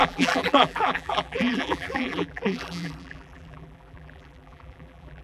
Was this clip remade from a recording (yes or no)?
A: yes